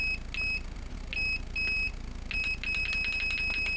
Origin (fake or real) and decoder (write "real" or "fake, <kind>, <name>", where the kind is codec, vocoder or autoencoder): real